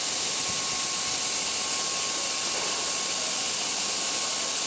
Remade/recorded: recorded